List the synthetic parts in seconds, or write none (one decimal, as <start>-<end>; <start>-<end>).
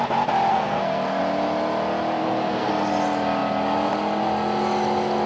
0.5-1.2; 2.2-2.7